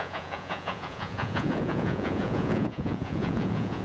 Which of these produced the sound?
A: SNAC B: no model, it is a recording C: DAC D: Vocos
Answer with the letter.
D